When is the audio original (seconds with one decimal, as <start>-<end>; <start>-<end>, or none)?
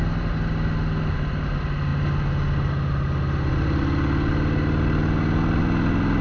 0.0-6.2